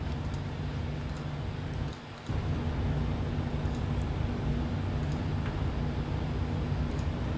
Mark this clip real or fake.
real